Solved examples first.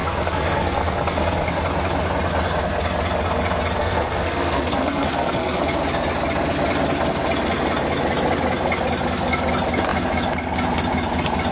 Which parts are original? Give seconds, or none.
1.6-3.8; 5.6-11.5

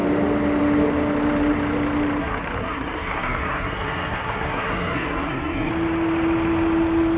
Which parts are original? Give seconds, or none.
0.0-2.2; 5.7-7.2